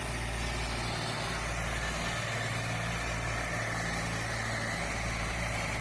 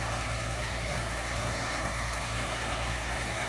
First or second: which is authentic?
first